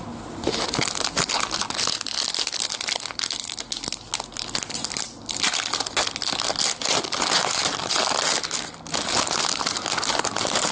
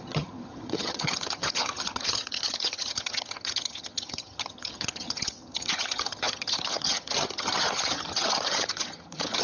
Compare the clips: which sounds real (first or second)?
first